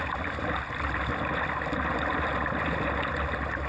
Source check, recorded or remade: recorded